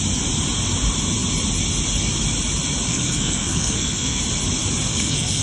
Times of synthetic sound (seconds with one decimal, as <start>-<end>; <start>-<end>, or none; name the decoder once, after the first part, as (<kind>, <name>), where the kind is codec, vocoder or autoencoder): 2.9-4.2 (codec, SNAC); 4.9-5.4